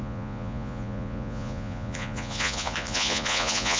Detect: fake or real fake